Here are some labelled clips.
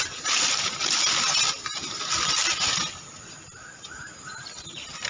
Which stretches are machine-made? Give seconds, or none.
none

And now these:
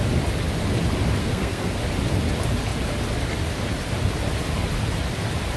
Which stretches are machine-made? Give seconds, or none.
1.2-1.8 (codec, SNAC)

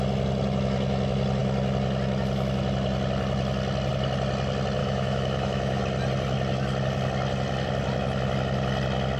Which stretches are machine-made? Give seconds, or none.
4.8-5.8 (autoencoder, DAC-VAE)

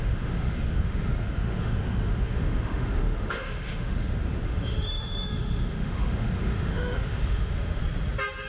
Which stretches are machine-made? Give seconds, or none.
0.0-7.8 (autoencoder, DAC-VAE)

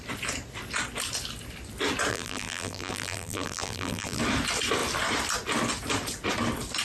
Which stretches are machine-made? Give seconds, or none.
2.1-4.2 (vocoder, BigVGAN v2)